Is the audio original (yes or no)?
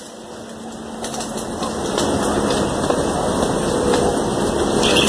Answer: yes